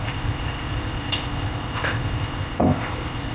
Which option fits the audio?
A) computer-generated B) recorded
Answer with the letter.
A